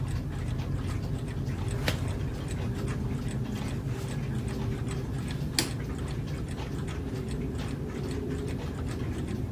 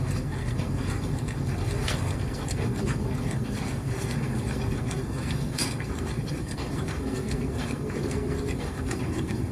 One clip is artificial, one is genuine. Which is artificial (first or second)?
second